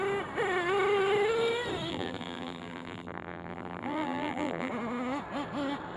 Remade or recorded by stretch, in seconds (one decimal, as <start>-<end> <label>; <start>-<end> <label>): 0.0-1.9 recorded; 1.9-4.7 remade; 4.7-6.0 recorded